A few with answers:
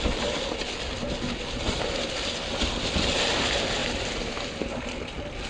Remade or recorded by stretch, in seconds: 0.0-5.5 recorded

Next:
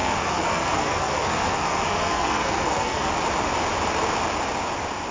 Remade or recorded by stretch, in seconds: 0.0-3.1 remade; 3.1-5.1 recorded

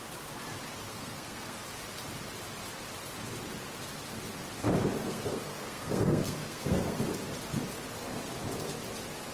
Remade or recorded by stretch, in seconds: 0.0-0.9 recorded; 0.9-1.6 remade; 1.6-5.0 recorded; 5.0-7.0 remade; 7.0-9.3 recorded

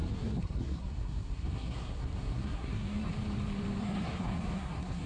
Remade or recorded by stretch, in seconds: 0.0-3.1 remade; 3.1-3.8 recorded; 3.8-5.1 remade

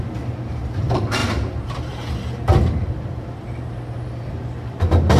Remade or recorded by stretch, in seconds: 0.0-5.2 recorded

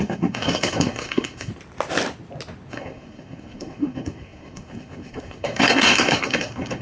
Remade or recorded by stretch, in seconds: 0.0-1.5 remade; 1.5-2.7 recorded; 2.7-6.8 remade

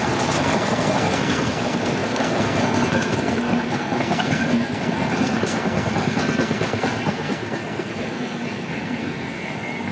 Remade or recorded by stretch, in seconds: 0.0-9.9 remade